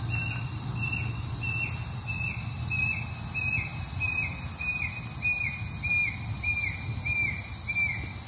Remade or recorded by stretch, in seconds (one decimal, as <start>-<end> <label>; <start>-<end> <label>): 0.0-8.3 recorded